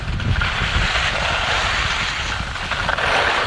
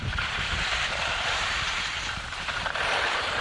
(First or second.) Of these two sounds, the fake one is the second